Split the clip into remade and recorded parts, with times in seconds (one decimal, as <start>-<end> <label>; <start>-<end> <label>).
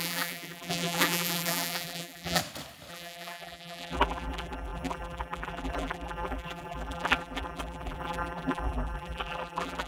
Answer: 0.0-2.4 remade; 2.4-2.9 recorded; 2.9-9.9 remade